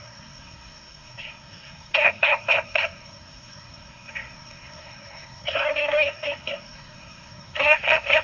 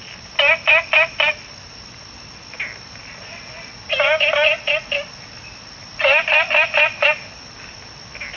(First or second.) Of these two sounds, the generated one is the first